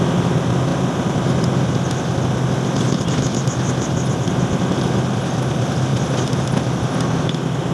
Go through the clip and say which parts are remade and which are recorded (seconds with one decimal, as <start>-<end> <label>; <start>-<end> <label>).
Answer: 0.0-7.7 recorded